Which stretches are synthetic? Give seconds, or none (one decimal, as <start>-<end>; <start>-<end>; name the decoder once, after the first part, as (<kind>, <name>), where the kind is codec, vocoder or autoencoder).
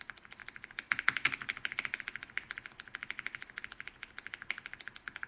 none